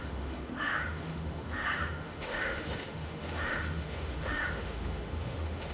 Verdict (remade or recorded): remade